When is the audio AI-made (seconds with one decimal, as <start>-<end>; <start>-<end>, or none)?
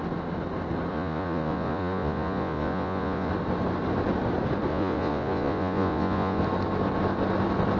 0.9-3.3; 4.7-6.4